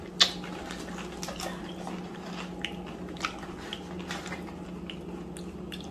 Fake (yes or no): no